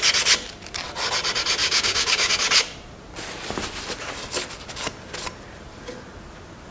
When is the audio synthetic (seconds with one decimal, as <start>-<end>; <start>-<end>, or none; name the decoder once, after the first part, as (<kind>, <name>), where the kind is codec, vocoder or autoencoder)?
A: 1.6-2.3 (codec, DAC)